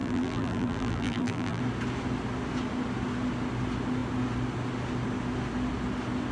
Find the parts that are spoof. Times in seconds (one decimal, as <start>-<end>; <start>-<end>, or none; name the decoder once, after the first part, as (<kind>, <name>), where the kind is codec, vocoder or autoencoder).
0.0-1.6 (vocoder, BigVGAN v2)